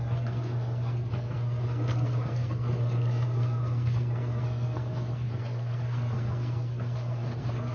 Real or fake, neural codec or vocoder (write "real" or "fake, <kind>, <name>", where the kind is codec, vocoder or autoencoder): fake, codec, SNAC